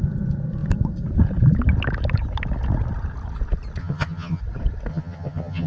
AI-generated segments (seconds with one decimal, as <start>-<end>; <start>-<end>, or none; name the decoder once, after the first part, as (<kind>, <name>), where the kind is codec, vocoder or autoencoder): 3.8-4.4 (vocoder, HiFi-GAN); 4.9-5.7